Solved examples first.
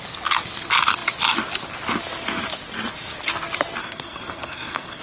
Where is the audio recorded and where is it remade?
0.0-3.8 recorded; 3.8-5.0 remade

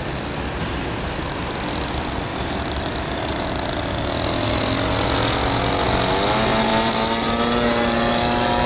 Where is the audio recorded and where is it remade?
0.0-2.3 recorded; 2.3-3.8 remade; 3.8-8.7 recorded

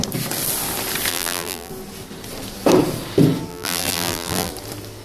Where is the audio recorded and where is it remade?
0.0-1.1 recorded; 1.1-1.7 remade; 1.7-3.5 recorded; 3.5-4.5 remade; 4.5-5.0 recorded

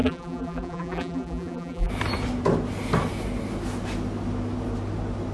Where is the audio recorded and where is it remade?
0.0-1.9 remade; 1.9-5.3 recorded